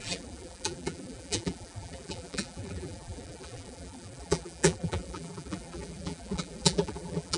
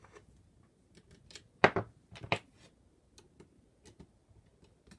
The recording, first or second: second